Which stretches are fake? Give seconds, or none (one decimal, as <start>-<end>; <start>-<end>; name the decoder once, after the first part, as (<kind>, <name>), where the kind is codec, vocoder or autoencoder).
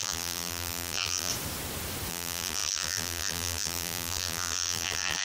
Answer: 0.0-1.3 (vocoder, BigVGAN v2); 2.1-5.2